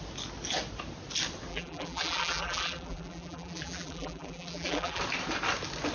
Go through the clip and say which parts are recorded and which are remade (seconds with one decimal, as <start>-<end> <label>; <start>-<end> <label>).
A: 0.0-1.5 recorded; 1.5-5.0 remade; 5.0-5.9 recorded